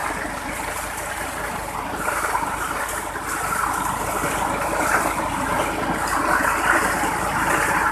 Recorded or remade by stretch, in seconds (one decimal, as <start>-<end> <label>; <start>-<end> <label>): 0.0-2.8 remade; 2.8-7.9 recorded

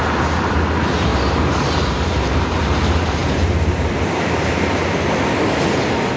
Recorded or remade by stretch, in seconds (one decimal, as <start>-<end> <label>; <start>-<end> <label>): 0.0-1.1 recorded; 1.1-2.4 remade; 2.4-3.2 recorded; 3.2-4.9 remade; 4.9-6.2 recorded

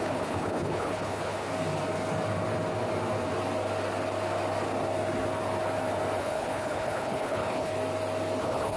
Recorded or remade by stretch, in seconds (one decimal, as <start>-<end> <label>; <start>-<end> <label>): 0.0-1.5 remade; 1.5-6.2 recorded; 6.2-7.7 remade; 7.7-8.4 recorded; 8.4-8.8 remade